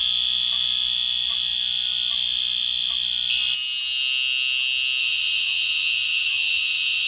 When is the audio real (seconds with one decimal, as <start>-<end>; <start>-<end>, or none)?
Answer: 0.0-5.0